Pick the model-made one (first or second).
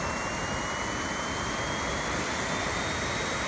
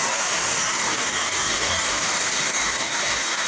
second